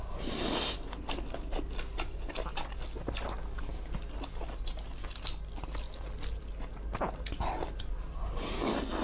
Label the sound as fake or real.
real